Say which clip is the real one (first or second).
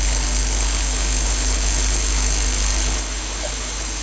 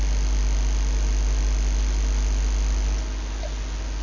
second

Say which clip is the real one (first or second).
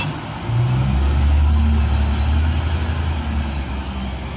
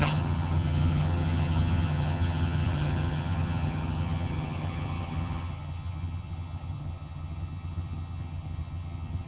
first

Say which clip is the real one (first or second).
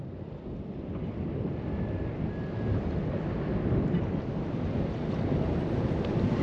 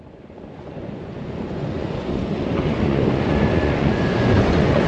first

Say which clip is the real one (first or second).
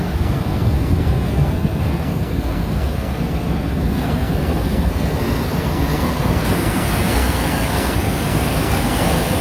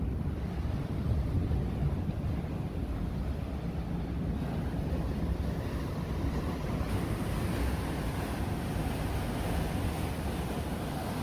second